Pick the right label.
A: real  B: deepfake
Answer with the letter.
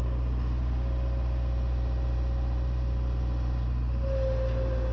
A